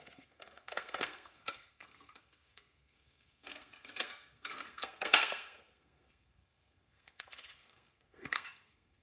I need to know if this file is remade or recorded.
remade